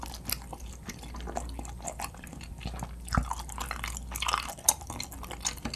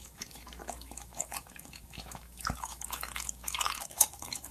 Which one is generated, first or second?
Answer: second